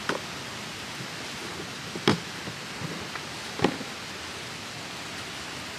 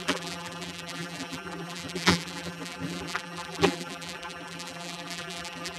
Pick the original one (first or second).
first